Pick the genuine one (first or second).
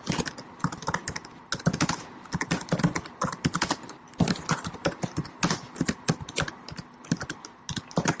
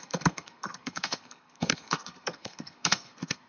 first